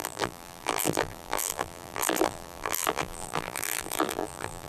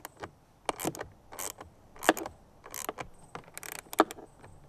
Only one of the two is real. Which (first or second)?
second